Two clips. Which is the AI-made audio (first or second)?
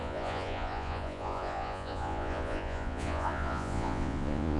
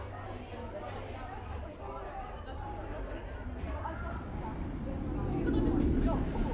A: first